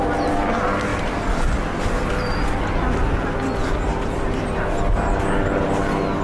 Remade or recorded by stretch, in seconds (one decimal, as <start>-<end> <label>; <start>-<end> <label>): 0.0-6.2 recorded